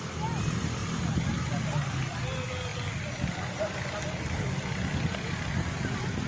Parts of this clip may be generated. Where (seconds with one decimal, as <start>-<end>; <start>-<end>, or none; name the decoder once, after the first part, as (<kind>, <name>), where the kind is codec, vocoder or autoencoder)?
none